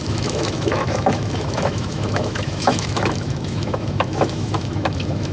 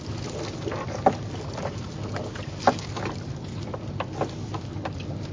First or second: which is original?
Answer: second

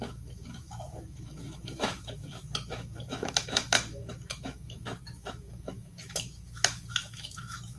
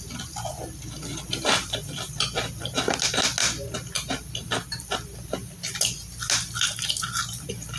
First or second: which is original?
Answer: second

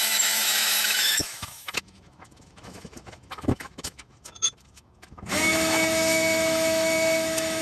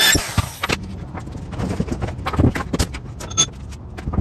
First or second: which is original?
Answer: second